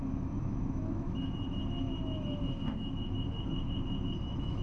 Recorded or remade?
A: remade